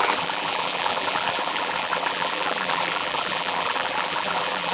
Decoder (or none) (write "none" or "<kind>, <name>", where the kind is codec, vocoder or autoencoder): vocoder, BigVGAN v2